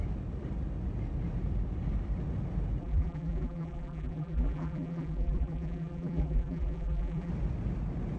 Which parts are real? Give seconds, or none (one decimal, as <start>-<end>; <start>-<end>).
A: 0.0-2.8; 7.3-8.2